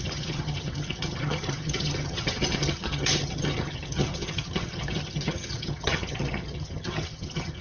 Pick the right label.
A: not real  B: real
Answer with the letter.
A